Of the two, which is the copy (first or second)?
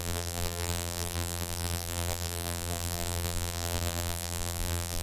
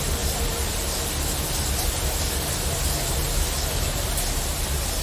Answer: first